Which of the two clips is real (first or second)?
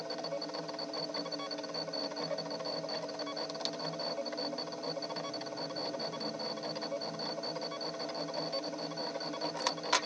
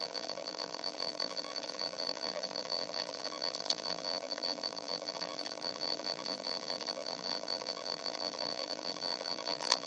first